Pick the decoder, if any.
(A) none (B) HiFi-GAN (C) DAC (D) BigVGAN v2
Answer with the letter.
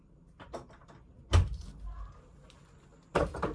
A